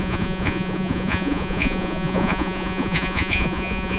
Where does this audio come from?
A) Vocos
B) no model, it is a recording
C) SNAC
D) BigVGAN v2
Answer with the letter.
A